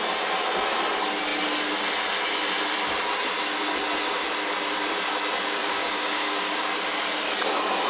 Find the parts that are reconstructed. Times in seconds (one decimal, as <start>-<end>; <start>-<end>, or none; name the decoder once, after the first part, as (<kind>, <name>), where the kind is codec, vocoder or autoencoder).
5.6-6.6 (codec, DAC)